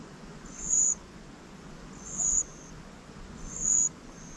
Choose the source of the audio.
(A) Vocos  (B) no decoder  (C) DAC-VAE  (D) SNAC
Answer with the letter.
A